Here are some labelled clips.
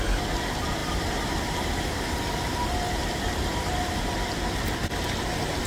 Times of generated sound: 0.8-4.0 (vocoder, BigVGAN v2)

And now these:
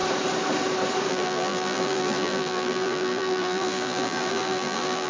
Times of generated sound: 1.1-5.1 (vocoder, BigVGAN v2)

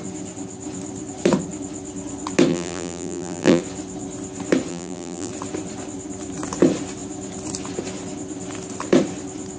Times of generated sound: 2.5-3.6 (vocoder, BigVGAN v2); 4.7-5.3

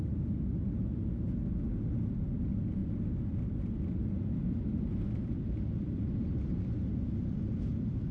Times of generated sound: 0.0-0.6 (vocoder, BigVGAN v2); 2.0-8.1

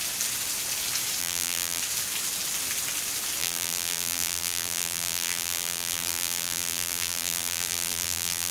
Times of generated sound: 1.2-1.8 (vocoder, BigVGAN v2); 3.4-8.5